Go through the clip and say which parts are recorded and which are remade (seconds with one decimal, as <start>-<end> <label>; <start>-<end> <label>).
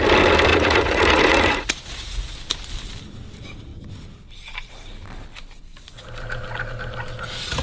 0.0-0.5 recorded; 0.5-2.3 remade; 2.3-7.6 recorded